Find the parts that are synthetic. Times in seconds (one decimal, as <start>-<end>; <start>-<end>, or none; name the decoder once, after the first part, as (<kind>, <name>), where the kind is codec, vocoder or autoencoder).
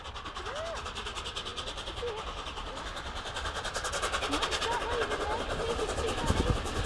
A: none